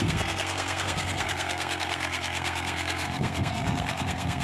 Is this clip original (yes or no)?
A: no